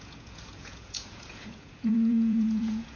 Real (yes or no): no